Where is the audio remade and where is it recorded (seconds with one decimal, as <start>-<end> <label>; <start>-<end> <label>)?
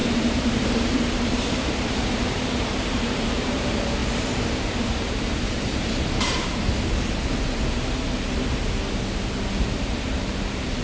0.0-4.0 remade; 4.0-4.9 recorded; 4.9-6.7 remade; 6.7-9.5 recorded; 9.5-10.8 remade